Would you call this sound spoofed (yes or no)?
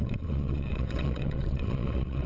yes